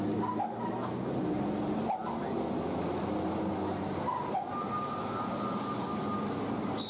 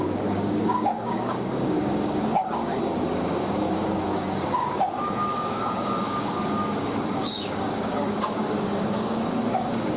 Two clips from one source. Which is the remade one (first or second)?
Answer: second